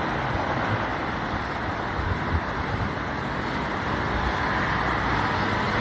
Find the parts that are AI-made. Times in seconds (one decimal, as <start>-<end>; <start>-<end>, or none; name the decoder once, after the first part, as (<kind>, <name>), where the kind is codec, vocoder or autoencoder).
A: 0.9-4.4 (vocoder, BigVGAN v2)